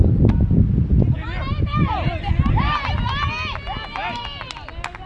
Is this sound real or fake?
real